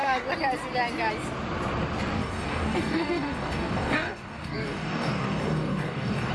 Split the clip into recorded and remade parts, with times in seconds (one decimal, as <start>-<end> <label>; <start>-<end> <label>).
0.0-2.2 recorded; 2.2-6.3 remade